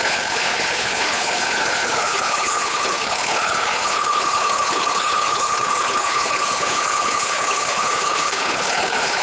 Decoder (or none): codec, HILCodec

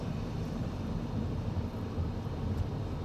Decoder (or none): vocoder, BigVGAN v2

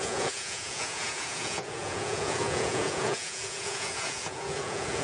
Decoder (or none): vocoder, Vocos